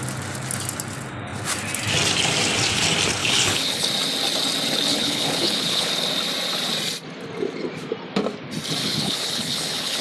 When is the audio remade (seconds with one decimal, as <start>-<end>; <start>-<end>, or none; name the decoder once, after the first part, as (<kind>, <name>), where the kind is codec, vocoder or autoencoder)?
3.2-3.9 (codec, HILCodec); 4.9-5.9; 8.8-10.0